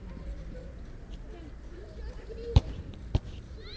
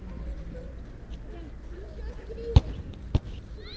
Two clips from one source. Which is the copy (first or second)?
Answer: first